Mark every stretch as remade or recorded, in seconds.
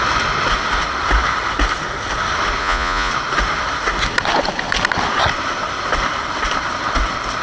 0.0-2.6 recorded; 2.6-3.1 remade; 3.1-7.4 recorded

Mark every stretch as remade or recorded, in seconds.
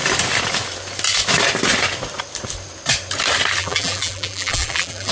0.0-3.6 recorded; 3.6-5.1 remade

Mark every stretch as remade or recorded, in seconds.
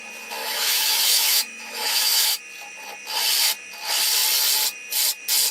0.0-0.4 recorded; 0.4-2.4 remade; 2.4-5.5 recorded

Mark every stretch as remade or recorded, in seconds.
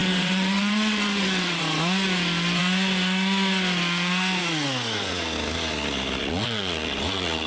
0.0-1.6 remade; 1.6-6.2 recorded; 6.2-7.5 remade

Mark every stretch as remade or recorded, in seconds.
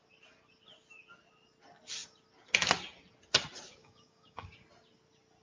0.0-3.8 recorded; 3.8-4.5 remade; 4.5-5.4 recorded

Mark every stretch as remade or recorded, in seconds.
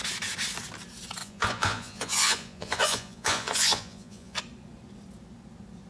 0.0-1.2 recorded; 1.2-4.4 remade; 4.4-5.9 recorded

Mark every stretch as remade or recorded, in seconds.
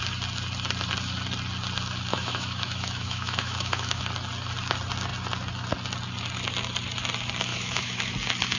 0.0-2.1 recorded; 2.1-4.0 remade; 4.0-7.5 recorded; 7.5-8.1 remade; 8.1-8.6 recorded